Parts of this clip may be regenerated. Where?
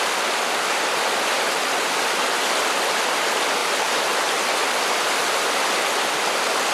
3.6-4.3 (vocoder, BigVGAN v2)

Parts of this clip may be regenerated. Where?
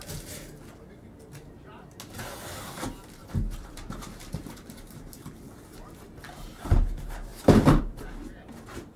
3.2-5.3 (vocoder, BigVGAN v2)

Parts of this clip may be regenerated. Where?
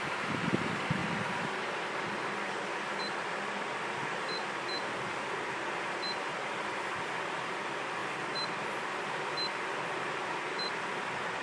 0.0-1.0 (vocoder, BigVGAN v2); 3.0-8.0; 10.4-11.4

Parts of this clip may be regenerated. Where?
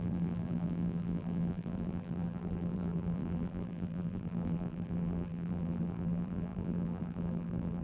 0.0-7.8 (vocoder, BigVGAN v2)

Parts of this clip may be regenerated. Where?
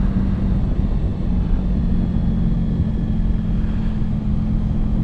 1.1-1.8 (vocoder, BigVGAN v2)